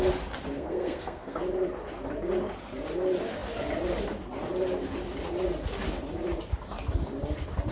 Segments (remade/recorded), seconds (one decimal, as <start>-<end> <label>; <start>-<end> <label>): 0.0-0.5 recorded; 0.5-1.4 remade; 1.4-7.7 recorded